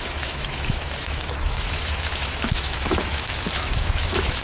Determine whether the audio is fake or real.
fake